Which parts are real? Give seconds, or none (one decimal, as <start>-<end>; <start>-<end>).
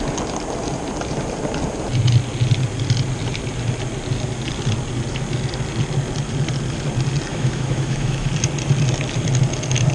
0.0-7.3; 8.3-9.9